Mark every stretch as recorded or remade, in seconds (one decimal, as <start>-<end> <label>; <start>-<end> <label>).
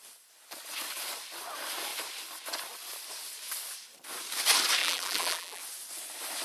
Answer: 0.0-4.8 recorded; 4.8-5.6 remade; 5.6-6.4 recorded